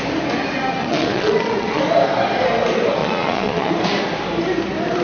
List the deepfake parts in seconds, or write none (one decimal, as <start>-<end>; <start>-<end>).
0.8-1.8; 3.0-3.7